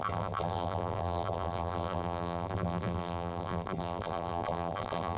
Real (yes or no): no